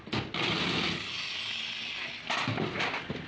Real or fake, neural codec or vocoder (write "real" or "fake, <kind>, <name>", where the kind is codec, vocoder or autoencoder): real